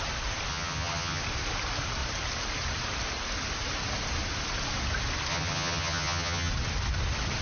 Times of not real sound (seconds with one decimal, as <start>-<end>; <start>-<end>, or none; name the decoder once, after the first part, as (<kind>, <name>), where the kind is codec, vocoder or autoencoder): 0.5-1.2 (vocoder, HiFi-GAN); 5.3-6.5